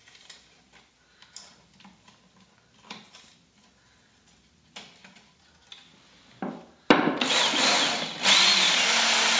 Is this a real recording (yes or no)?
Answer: yes